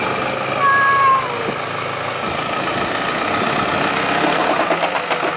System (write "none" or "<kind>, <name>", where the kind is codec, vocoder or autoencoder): none